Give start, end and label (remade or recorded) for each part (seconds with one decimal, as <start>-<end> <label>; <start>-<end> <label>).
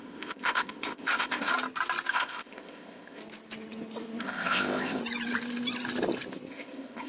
0.0-1.5 remade; 1.5-2.1 recorded; 2.1-3.2 remade; 3.2-4.2 recorded; 4.2-5.0 remade; 5.0-6.5 recorded; 6.5-7.1 remade